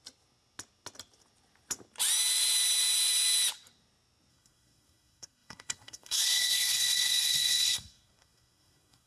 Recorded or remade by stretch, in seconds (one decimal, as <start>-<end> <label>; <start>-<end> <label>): 0.0-4.3 recorded; 4.3-9.1 remade